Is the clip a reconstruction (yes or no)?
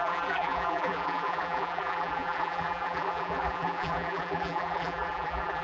yes